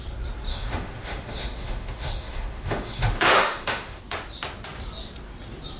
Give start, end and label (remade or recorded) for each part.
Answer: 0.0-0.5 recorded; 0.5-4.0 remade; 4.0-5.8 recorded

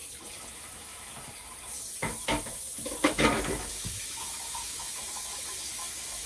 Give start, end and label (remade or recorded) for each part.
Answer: 0.0-0.5 recorded; 0.5-1.1 remade; 1.1-2.0 recorded; 2.0-6.3 remade

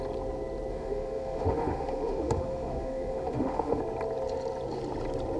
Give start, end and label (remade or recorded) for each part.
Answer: 0.0-0.7 recorded; 0.7-3.8 remade; 3.8-5.4 recorded

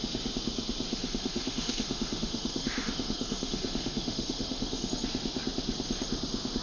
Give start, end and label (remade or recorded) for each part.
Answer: 0.0-0.9 recorded; 0.9-4.9 remade; 4.9-6.6 recorded

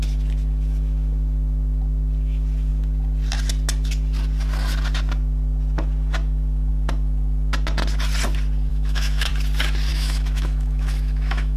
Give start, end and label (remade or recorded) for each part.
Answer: 0.0-8.7 recorded; 8.7-9.3 remade; 9.3-9.9 recorded; 9.9-11.6 remade

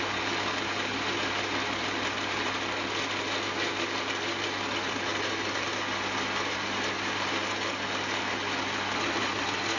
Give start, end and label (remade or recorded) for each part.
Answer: 0.0-9.8 recorded

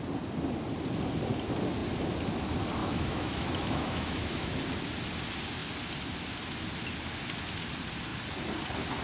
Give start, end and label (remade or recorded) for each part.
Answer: 0.0-2.8 recorded; 2.8-4.6 remade; 4.6-9.0 recorded

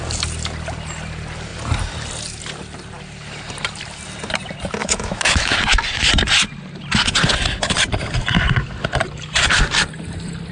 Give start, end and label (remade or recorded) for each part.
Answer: 0.0-4.8 recorded; 4.8-5.6 remade; 5.6-10.5 recorded